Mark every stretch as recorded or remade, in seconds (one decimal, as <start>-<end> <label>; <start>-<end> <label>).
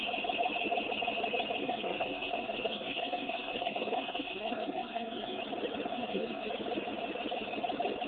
0.0-1.6 recorded; 1.6-5.4 remade; 5.4-5.9 recorded; 5.9-6.5 remade; 6.5-8.1 recorded